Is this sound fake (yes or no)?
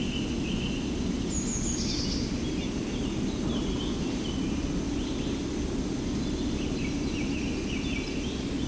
no